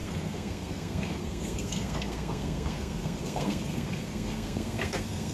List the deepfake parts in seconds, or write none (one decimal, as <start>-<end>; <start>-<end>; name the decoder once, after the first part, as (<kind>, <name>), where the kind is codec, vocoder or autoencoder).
0.0-5.3 (codec, SNAC)